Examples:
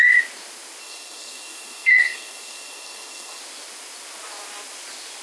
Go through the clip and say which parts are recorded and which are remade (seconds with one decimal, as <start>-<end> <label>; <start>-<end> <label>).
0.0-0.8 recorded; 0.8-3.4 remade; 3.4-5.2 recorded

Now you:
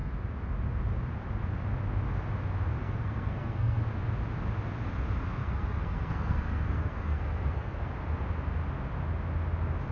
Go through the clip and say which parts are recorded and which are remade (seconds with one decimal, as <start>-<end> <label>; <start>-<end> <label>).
0.0-2.8 recorded; 2.8-3.8 remade; 3.8-5.4 recorded; 5.4-7.9 remade; 7.9-9.9 recorded

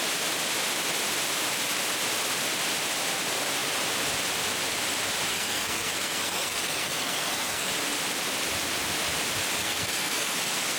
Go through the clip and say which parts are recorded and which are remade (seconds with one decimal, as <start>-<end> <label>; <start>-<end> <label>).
0.0-5.3 recorded; 5.3-7.7 remade; 7.7-9.6 recorded; 9.6-10.8 remade